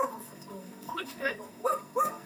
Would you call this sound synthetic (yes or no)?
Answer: yes